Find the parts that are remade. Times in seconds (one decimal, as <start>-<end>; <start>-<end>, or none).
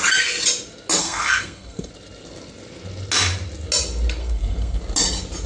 1.0-1.9; 4.2-4.8